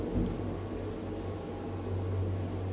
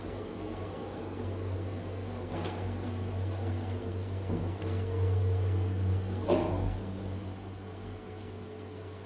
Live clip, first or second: first